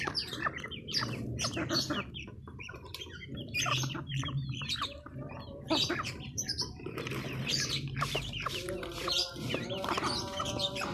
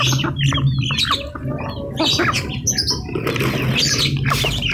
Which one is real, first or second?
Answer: second